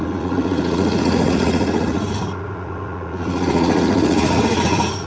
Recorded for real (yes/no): no